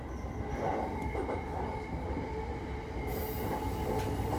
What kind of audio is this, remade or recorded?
recorded